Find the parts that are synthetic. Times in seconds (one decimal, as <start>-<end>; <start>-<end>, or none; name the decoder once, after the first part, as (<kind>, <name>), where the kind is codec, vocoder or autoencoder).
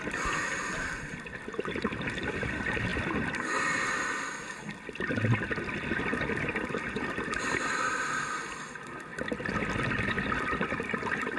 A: none